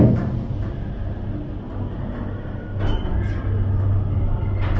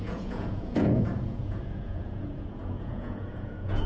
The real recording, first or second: first